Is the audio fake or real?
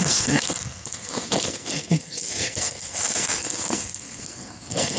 fake